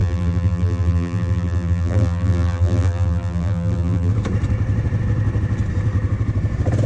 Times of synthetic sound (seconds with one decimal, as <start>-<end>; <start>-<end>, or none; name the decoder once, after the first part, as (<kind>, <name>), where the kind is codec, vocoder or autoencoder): 0.0-4.1 (vocoder, BigVGAN v2)